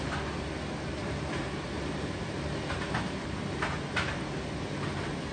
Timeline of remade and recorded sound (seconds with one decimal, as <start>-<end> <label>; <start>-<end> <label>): 0.0-1.0 recorded; 1.0-3.9 remade; 3.9-5.3 recorded

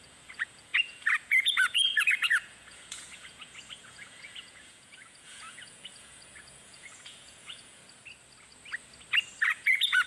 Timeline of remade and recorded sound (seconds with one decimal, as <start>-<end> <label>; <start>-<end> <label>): 0.0-7.8 remade; 7.8-9.4 recorded; 9.4-10.1 remade

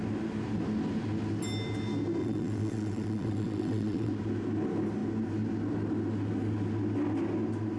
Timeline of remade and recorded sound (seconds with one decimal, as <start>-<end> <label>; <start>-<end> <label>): 0.0-2.2 recorded; 2.2-4.1 remade; 4.1-7.8 recorded

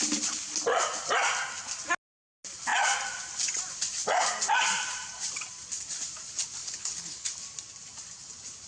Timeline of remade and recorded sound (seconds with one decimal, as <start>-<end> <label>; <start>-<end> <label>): 0.0-6.6 recorded; 6.6-7.3 remade; 7.3-8.7 recorded

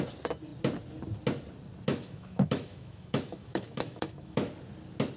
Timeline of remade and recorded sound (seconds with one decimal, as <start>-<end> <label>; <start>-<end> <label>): 0.0-1.9 recorded; 1.9-4.5 remade; 4.5-5.2 recorded

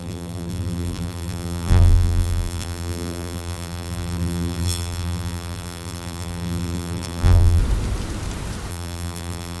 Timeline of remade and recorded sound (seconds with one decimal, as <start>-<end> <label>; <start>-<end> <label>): 0.0-7.6 remade; 7.6-8.7 recorded; 8.7-9.6 remade

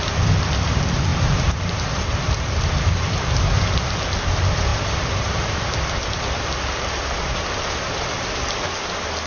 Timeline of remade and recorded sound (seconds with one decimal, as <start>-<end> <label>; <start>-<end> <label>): 0.0-1.1 recorded; 1.1-3.8 remade; 3.8-4.7 recorded; 4.7-5.6 remade; 5.6-9.3 recorded